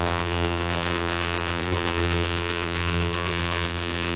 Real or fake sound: fake